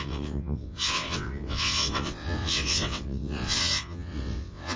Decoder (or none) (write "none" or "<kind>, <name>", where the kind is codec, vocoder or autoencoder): vocoder, WaveNeXt